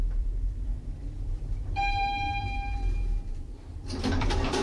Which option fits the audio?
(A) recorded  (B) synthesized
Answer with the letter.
B